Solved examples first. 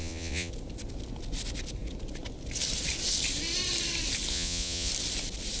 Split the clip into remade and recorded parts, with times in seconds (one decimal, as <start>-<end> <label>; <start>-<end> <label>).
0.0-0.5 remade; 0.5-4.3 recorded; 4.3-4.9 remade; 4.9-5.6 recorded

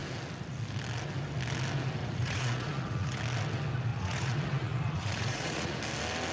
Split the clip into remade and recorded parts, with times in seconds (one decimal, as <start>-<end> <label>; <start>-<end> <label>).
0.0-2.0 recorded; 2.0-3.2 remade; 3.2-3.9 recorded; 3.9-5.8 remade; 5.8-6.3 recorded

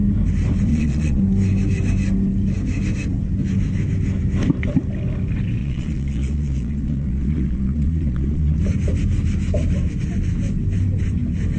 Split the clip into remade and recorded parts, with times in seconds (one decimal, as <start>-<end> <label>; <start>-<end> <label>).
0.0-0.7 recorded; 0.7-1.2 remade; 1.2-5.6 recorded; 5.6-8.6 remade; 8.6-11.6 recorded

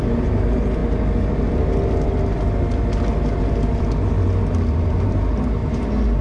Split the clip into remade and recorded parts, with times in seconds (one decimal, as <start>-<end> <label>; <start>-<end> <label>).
0.0-6.2 recorded

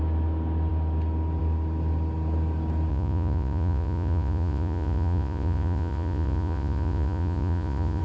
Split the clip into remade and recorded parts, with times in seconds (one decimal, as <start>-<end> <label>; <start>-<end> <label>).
0.0-2.9 recorded; 2.9-8.0 remade

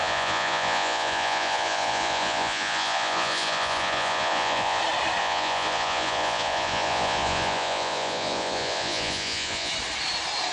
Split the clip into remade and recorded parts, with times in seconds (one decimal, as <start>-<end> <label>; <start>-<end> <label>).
0.0-4.8 remade; 4.8-5.2 recorded; 5.2-9.7 remade; 9.7-10.5 recorded